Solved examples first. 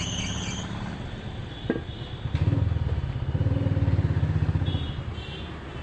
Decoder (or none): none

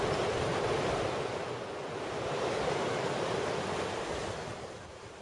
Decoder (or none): none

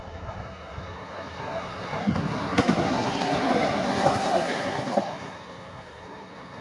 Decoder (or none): codec, SNAC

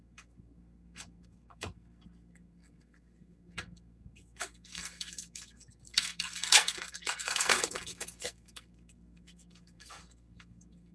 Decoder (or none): codec, SNAC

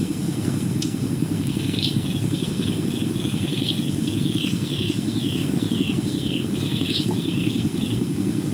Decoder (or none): codec, SNAC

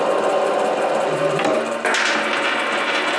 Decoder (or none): none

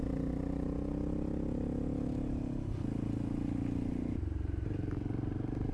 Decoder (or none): none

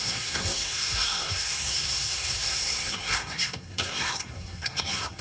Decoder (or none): codec, SNAC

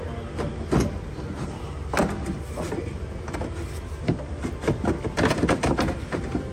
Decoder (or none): none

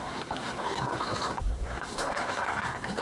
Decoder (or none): codec, SNAC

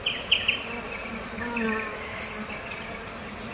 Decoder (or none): none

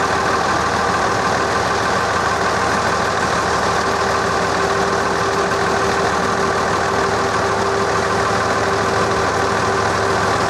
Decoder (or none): none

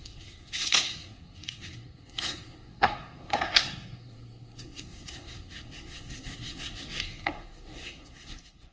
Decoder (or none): codec, SNAC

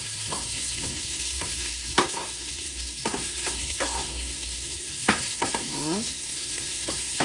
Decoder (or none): codec, SNAC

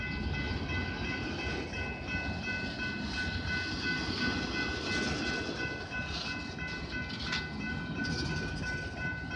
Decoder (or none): none